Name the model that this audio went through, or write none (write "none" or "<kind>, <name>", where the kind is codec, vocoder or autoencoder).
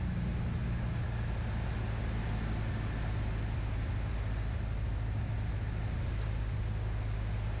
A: none